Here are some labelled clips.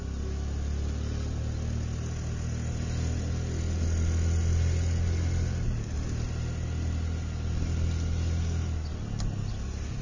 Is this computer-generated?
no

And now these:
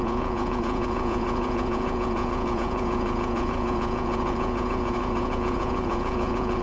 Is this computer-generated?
yes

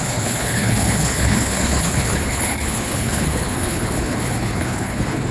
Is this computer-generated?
yes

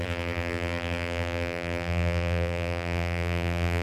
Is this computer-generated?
yes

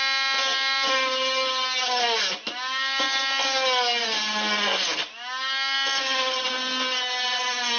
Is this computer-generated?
no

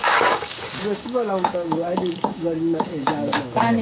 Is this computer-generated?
yes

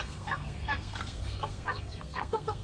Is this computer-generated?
yes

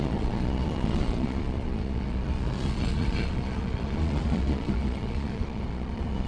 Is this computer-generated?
yes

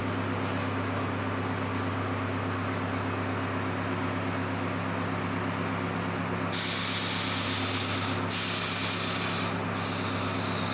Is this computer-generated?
no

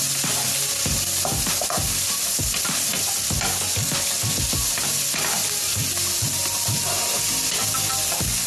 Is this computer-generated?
no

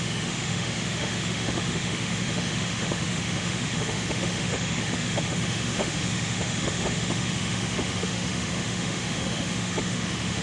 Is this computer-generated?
yes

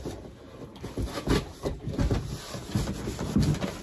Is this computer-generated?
no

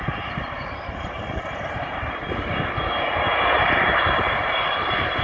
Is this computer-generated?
yes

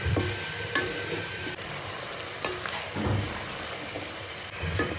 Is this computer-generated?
no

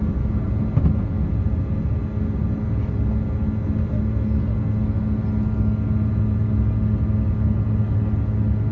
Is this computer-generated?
no